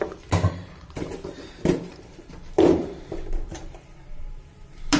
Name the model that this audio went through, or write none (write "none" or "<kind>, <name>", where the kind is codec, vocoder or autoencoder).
vocoder, BigVGAN v2